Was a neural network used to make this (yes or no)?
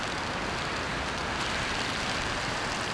no